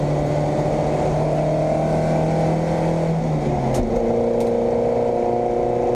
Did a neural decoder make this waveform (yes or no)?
no